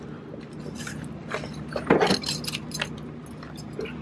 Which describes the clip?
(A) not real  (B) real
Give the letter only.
B